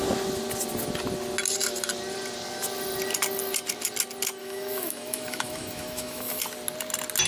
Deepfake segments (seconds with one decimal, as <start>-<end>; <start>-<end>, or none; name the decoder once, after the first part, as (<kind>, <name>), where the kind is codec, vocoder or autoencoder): 4.4-6.4 (autoencoder, DAC-VAE)

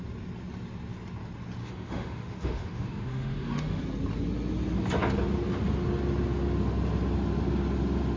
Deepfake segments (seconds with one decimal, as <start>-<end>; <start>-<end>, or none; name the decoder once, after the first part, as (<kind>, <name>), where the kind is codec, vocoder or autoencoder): 1.6-3.8 (autoencoder, DAC-VAE)

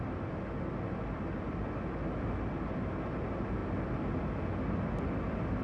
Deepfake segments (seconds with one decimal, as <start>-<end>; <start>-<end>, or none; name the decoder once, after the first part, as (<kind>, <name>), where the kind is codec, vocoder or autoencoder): none